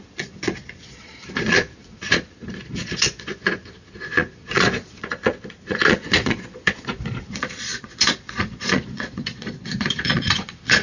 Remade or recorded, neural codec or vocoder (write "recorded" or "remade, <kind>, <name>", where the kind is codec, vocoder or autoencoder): remade, vocoder, Vocos